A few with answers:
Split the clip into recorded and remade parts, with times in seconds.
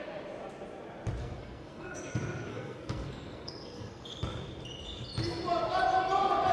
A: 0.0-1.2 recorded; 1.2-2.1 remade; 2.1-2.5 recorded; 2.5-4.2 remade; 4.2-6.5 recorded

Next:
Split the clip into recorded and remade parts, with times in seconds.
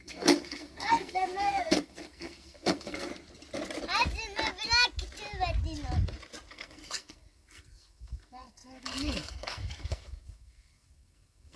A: 0.0-3.1 remade; 3.1-6.5 recorded; 6.5-11.6 remade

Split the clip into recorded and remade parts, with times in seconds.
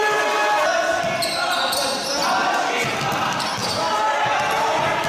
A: 0.0-5.1 recorded